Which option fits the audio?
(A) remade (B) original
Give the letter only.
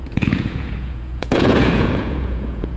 A